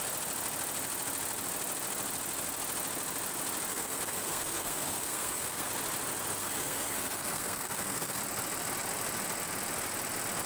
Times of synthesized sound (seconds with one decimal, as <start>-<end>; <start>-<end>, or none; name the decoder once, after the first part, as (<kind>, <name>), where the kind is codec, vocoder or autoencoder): 3.7-5.7 (codec, SNAC); 6.4-8.2